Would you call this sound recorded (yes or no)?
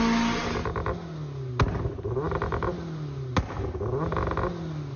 yes